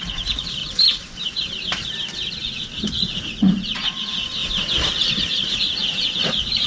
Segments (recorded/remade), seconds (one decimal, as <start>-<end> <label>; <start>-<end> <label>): 0.0-0.6 remade; 0.6-2.4 recorded; 2.4-4.4 remade; 4.4-5.2 recorded; 5.2-6.7 remade